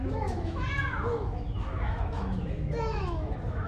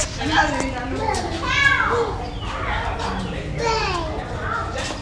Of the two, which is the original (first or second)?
second